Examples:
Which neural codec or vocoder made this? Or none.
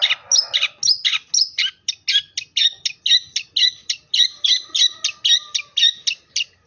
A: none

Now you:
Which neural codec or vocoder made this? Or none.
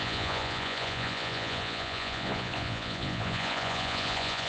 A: vocoder, Vocos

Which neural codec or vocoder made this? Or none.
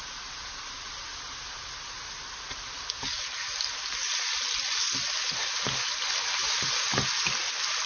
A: none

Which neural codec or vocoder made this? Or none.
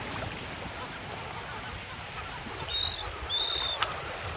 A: none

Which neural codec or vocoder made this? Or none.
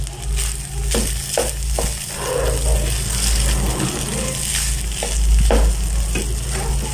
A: none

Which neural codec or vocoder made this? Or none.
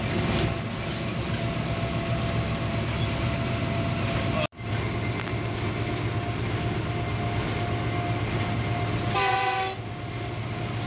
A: none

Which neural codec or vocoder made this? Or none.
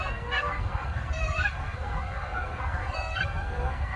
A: codec, SNAC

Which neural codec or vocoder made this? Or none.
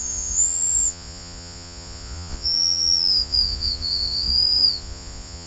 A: vocoder, Vocos